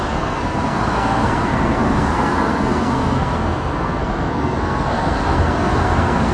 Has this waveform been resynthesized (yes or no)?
yes